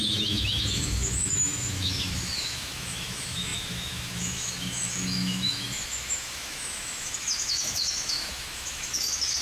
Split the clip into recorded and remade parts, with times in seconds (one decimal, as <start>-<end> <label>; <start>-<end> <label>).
0.0-9.4 remade